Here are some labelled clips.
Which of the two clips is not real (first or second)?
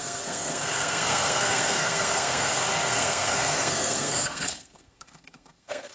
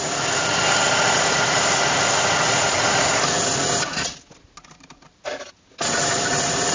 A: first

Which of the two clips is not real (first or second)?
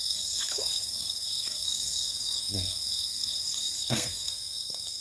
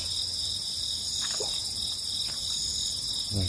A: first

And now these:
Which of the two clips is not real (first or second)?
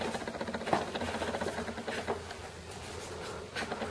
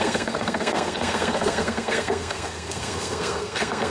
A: second